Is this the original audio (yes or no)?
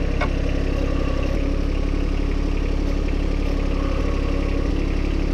yes